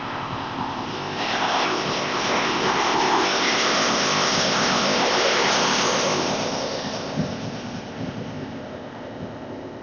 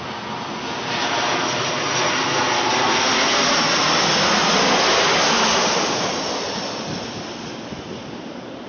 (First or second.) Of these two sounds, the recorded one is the second